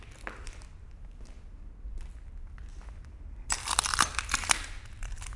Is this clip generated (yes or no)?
no